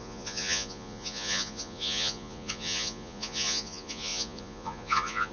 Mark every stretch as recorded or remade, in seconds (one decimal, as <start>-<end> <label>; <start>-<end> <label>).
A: 0.0-5.3 remade